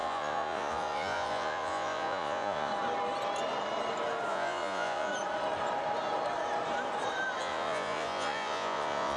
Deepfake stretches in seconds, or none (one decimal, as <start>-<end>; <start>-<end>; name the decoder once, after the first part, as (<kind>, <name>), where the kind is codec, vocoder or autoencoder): 0.0-2.7 (vocoder, Vocos); 4.3-5.1; 7.4-9.2